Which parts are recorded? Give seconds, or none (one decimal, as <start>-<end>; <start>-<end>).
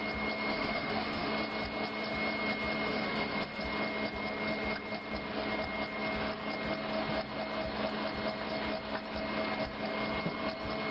0.0-0.5; 1.3-2.9; 3.6-10.9